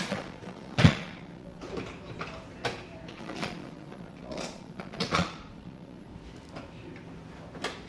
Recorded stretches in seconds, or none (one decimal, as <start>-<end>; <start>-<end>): 1.6-3.1; 6.1-7.9